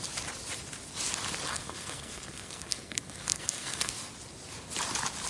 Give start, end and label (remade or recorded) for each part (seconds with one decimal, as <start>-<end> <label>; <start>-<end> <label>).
0.0-1.5 recorded; 1.5-3.9 remade; 3.9-5.3 recorded